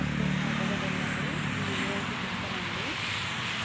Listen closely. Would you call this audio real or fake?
real